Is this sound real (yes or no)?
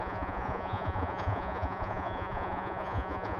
no